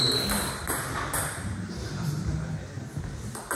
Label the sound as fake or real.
real